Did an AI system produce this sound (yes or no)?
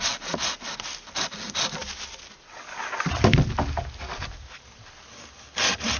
no